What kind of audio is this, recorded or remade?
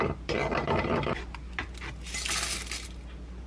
recorded